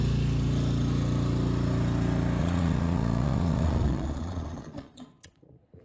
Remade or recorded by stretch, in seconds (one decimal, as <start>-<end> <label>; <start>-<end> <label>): 0.0-2.4 recorded; 2.4-5.8 remade